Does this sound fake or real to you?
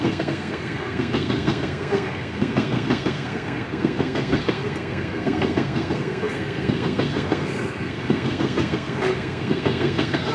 fake